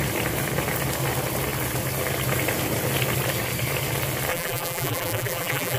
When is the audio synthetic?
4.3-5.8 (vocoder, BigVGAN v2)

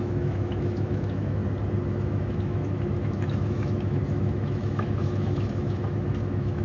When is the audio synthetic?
0.0-1.4 (autoencoder, DAC-VAE); 1.9-6.6

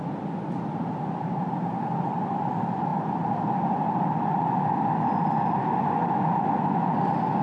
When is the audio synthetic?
2.9-5.0 (vocoder, BigVGAN v2)